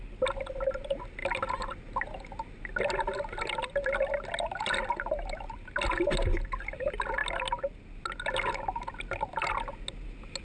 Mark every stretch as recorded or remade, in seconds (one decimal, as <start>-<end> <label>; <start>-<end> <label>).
0.0-10.4 recorded